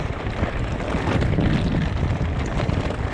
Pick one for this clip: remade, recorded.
recorded